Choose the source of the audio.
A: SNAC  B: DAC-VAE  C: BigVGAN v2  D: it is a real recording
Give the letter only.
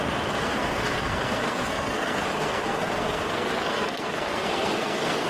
A